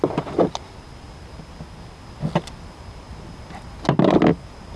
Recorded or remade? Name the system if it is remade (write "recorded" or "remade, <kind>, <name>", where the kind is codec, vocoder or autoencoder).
recorded